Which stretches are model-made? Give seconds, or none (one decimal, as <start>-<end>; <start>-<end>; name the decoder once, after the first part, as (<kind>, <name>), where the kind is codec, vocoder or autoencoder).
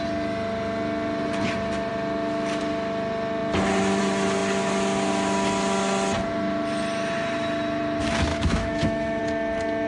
8.3-9.2 (autoencoder, DAC-VAE)